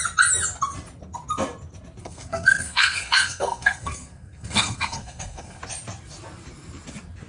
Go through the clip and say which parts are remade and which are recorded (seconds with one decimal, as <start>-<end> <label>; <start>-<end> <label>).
0.0-2.0 recorded; 2.0-5.6 remade; 5.6-7.3 recorded